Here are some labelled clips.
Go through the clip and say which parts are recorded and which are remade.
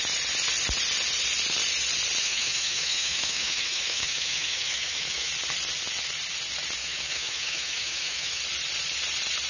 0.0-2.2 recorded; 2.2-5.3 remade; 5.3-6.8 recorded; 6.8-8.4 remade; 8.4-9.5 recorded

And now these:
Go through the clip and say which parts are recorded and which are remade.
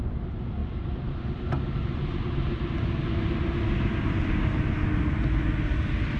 0.0-6.2 recorded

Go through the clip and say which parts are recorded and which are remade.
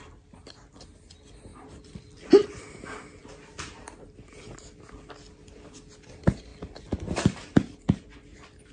0.0-8.7 recorded